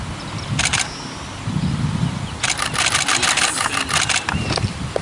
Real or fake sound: real